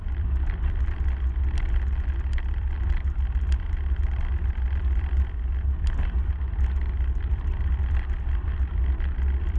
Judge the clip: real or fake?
real